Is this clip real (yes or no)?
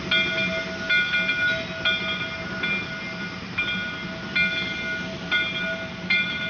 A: yes